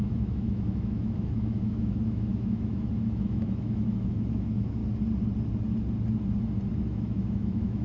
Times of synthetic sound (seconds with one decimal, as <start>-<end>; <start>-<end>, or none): 0.0-4.8; 6.8-7.8